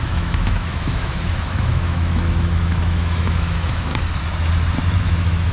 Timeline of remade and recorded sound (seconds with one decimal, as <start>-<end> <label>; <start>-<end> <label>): 0.0-3.9 remade; 3.9-5.0 recorded; 5.0-5.5 remade